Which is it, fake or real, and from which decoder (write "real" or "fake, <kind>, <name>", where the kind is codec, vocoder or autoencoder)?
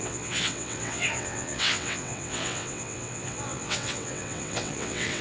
fake, vocoder, WaveNeXt